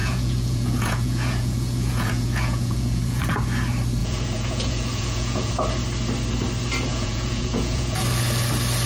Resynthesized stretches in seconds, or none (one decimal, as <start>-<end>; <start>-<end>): 0.0-3.2; 4.0-5.5; 6.9-8.0